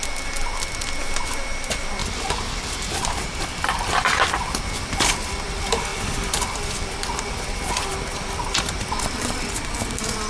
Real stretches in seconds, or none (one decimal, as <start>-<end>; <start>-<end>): 0.0-2.0; 4.6-5.9; 7.2-10.3